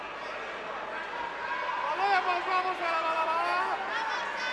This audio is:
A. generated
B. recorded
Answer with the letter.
B